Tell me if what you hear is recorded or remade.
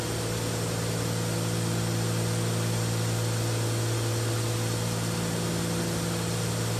recorded